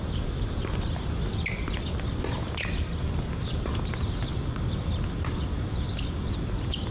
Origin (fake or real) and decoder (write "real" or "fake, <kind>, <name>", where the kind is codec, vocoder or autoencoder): real